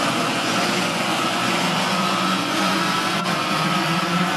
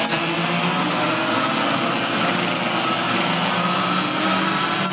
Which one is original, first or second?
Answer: second